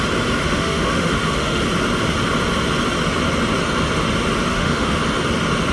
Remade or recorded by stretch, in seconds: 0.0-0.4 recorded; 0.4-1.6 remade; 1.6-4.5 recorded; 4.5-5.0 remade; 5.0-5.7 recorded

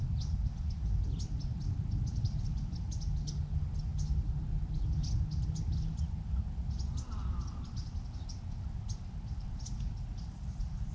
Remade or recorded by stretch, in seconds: 0.0-10.9 recorded

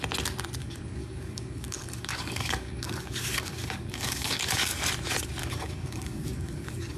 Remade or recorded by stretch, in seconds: 0.0-0.6 recorded; 0.6-4.8 remade; 4.8-5.4 recorded; 5.4-7.0 remade

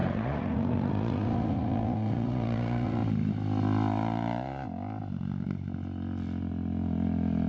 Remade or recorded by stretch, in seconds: 0.0-3.0 remade; 3.0-7.5 recorded

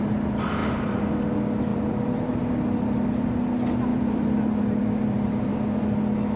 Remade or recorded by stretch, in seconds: 0.0-0.6 recorded; 0.6-1.1 remade; 1.1-1.7 recorded; 1.7-2.3 remade; 2.3-3.9 recorded; 3.9-5.8 remade; 5.8-6.4 recorded

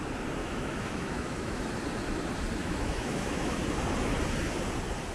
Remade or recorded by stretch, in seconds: 0.0-0.4 recorded; 0.4-1.6 remade; 1.6-2.6 recorded; 2.6-3.6 remade; 3.6-5.1 recorded